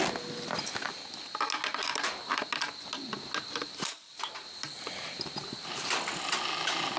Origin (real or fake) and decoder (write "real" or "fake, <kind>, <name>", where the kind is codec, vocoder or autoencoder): real